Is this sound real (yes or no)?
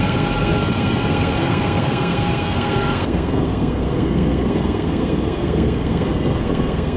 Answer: no